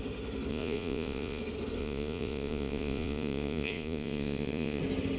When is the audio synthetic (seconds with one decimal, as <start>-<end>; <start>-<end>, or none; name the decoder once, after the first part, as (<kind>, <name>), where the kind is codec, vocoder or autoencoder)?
0.5-1.4 (vocoder, Vocos); 1.8-4.8